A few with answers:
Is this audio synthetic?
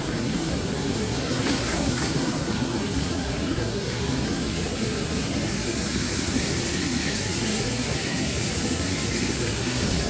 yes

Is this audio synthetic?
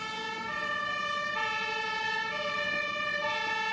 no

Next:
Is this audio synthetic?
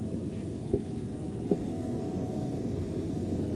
yes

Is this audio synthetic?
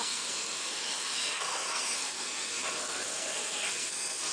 yes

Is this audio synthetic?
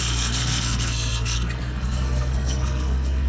yes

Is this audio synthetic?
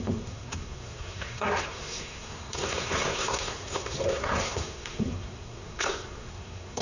yes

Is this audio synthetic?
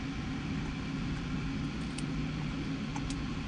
no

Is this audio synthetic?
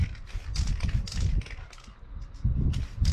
no